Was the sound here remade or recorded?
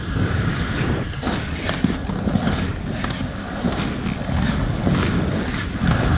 recorded